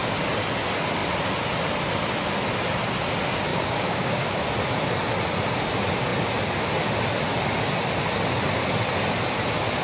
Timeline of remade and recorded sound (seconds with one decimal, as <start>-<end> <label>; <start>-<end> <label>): 0.0-3.5 recorded; 3.5-4.5 remade; 4.5-9.8 recorded